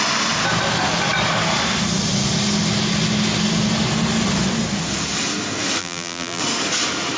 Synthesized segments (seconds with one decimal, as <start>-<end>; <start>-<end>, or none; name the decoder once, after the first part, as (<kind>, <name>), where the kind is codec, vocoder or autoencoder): 5.8-6.4 (vocoder, BigVGAN v2)